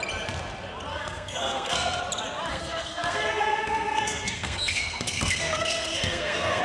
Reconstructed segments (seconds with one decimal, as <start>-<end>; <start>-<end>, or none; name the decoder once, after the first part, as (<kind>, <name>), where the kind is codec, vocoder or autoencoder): 0.9-2.0 (codec, SNAC); 2.5-6.6